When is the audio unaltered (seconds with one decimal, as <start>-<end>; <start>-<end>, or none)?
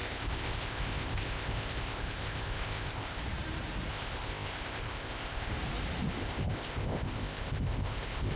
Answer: 3.2-3.9; 5.5-6.1